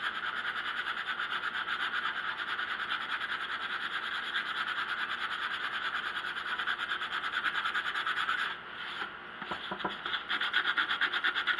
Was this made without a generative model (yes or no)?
yes